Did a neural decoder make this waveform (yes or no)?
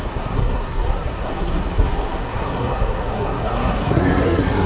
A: yes